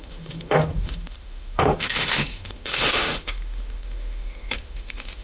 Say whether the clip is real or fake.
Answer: fake